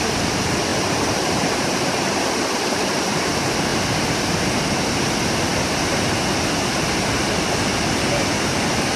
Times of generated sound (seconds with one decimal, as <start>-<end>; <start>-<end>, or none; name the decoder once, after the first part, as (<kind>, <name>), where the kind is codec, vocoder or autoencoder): none

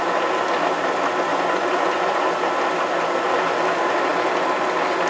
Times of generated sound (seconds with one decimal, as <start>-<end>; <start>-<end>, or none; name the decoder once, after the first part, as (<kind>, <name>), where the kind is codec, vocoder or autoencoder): 1.3-2.2 (vocoder, Vocos)

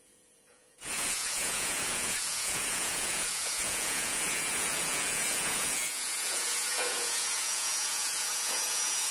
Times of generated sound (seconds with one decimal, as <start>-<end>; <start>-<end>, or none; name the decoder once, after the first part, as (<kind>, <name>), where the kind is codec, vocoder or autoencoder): 0.0-9.1 (vocoder, Vocos)